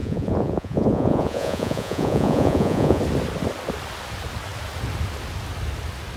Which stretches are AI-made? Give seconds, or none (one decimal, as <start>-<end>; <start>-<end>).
0.0-3.0